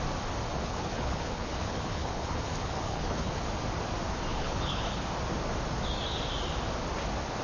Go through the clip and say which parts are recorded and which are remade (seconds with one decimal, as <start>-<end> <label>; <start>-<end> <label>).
0.0-0.5 recorded; 0.5-3.4 remade; 3.4-4.3 recorded; 4.3-5.0 remade; 5.0-7.4 recorded